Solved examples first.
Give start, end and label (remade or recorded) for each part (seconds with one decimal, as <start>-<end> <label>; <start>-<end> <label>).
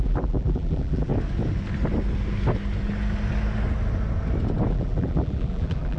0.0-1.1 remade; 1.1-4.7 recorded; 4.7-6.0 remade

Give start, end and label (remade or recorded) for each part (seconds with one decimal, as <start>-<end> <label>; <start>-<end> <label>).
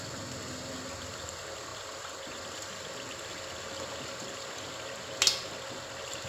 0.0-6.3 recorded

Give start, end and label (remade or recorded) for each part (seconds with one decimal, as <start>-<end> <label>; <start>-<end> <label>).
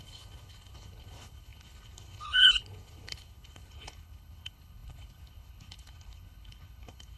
0.0-7.2 remade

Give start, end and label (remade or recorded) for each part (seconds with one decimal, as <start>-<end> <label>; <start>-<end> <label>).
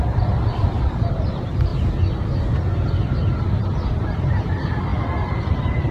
0.0-1.7 remade; 1.7-3.4 recorded; 3.4-5.9 remade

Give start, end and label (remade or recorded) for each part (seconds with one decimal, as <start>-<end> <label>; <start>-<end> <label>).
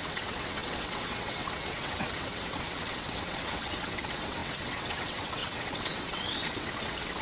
0.0-7.2 remade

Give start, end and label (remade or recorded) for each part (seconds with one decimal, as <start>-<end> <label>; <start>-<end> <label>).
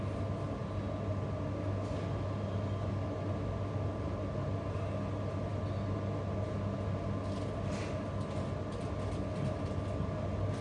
0.0-10.6 recorded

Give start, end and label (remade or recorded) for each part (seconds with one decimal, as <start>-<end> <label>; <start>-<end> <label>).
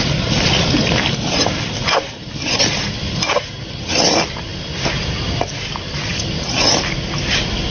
0.0-7.7 recorded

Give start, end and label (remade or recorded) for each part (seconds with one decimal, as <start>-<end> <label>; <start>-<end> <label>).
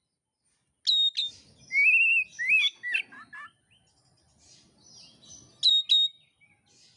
0.0-7.0 recorded